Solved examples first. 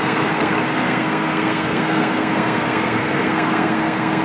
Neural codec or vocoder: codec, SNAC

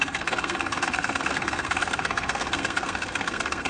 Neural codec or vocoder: codec, SNAC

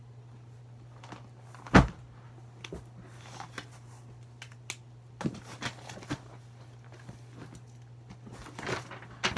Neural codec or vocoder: none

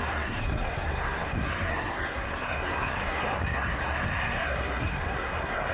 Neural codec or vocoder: codec, SNAC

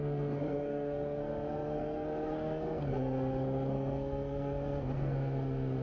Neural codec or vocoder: codec, SNAC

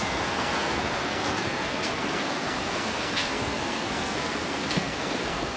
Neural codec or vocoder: codec, SNAC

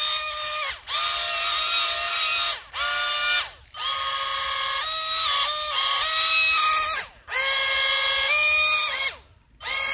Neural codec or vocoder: none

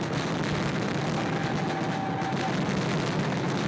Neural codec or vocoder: none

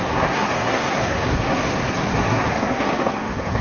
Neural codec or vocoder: codec, SNAC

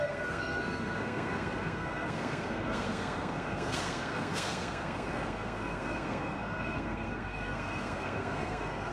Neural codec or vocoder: codec, SNAC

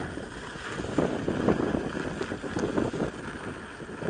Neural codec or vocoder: none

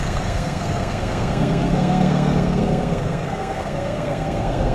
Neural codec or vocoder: codec, SNAC